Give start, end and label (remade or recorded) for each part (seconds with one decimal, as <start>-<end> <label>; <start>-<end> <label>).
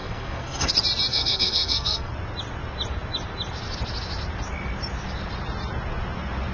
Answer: 0.0-0.7 remade; 0.7-1.1 recorded; 1.1-2.1 remade; 2.1-6.5 recorded